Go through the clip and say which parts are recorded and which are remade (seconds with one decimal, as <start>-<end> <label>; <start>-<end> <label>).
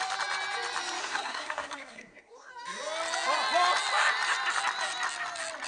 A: 0.0-1.0 recorded; 1.0-2.5 remade; 2.5-5.7 recorded